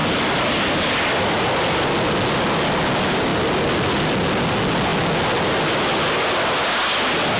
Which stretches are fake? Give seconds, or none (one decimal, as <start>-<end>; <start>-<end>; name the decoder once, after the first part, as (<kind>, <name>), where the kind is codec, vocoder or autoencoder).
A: 0.0-1.9 (vocoder, BigVGAN v2)